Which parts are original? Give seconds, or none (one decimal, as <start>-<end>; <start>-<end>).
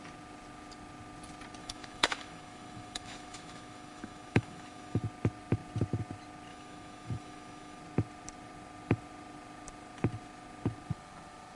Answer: 0.0-1.6; 5.0-6.5; 7.8-11.5